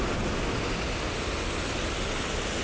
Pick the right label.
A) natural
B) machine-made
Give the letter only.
A